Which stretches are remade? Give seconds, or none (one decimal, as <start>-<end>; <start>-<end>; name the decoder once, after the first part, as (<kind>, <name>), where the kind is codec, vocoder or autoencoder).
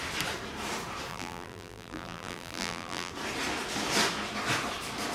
1.1-3.1 (vocoder, BigVGAN v2)